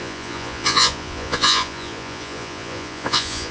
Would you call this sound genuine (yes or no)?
no